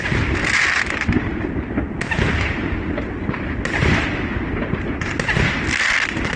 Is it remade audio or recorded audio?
recorded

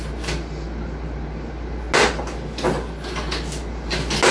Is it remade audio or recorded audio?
recorded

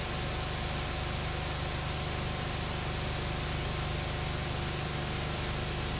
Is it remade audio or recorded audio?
recorded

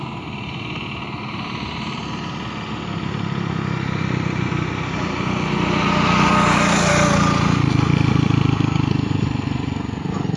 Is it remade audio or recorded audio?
recorded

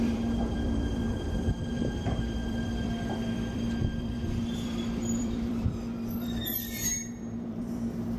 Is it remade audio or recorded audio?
remade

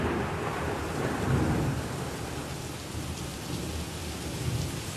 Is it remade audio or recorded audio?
remade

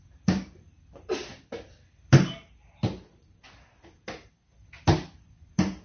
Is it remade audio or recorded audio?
recorded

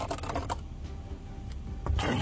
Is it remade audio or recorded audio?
recorded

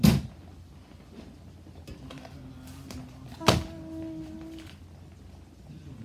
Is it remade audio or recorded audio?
recorded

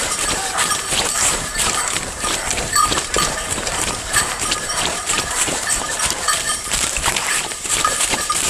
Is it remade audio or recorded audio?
remade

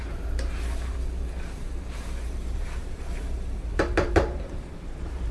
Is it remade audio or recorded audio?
remade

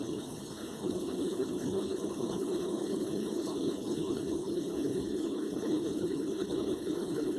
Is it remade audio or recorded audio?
remade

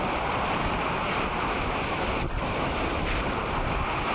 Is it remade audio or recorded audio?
recorded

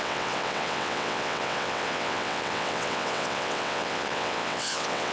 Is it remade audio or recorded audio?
remade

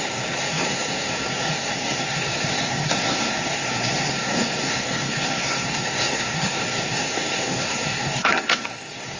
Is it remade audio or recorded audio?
remade